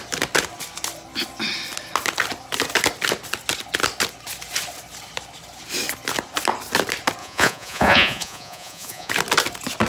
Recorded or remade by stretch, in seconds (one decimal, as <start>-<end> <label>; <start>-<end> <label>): 0.0-7.2 recorded; 7.2-9.1 remade; 9.1-9.9 recorded